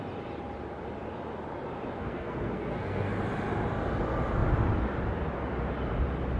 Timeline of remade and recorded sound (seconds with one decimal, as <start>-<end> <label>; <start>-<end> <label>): 0.0-1.9 recorded; 1.9-3.1 remade; 3.1-6.4 recorded